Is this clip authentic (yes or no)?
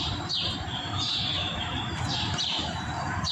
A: no